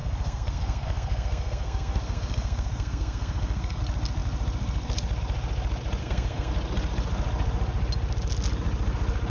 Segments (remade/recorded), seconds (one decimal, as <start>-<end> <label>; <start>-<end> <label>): 0.0-3.8 remade; 3.8-6.0 recorded; 6.0-6.5 remade; 6.5-9.3 recorded